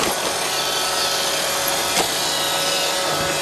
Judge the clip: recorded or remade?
recorded